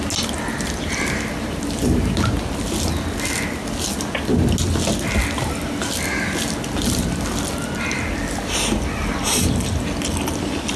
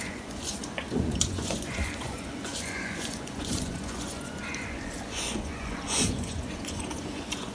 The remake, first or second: second